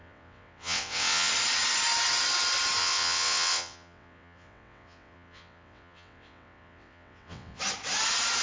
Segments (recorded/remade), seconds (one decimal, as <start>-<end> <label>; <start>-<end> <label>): 0.0-1.3 remade; 1.3-2.8 recorded; 2.8-7.6 remade; 7.6-8.4 recorded